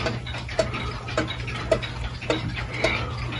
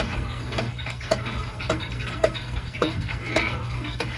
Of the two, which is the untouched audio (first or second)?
first